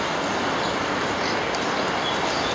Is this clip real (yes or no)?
yes